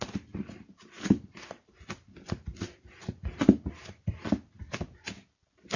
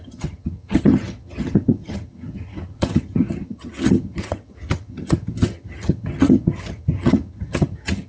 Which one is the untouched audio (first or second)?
first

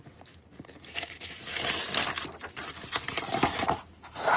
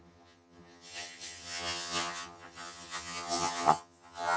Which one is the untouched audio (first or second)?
first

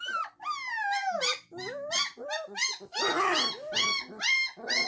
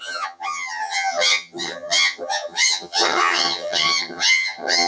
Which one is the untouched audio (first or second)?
first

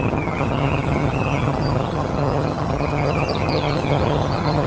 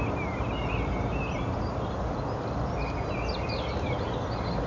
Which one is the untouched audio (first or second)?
second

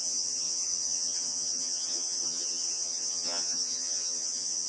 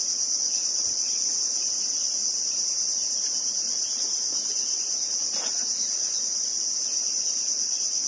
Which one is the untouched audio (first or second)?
second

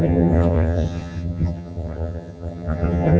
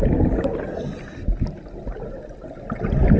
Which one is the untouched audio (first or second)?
second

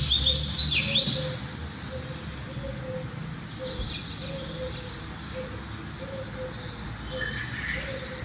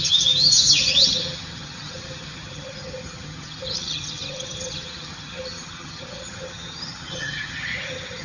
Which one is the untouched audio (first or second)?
first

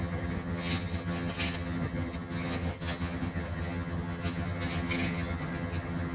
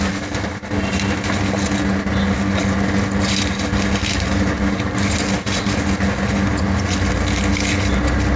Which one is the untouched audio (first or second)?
second